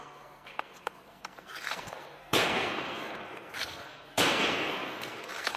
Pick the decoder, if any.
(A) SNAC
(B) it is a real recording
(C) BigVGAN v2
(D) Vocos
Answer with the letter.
A